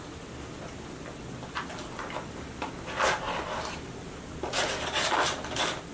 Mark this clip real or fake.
real